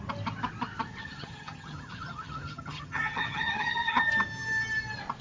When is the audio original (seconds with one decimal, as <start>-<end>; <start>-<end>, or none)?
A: 0.0-1.0; 4.1-5.2